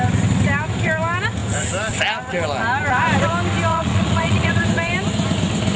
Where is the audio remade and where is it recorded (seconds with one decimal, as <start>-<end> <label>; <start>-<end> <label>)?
0.0-3.7 recorded; 3.7-4.6 remade; 4.6-5.8 recorded